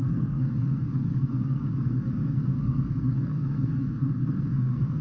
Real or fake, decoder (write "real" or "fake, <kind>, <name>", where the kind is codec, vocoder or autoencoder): fake, codec, SNAC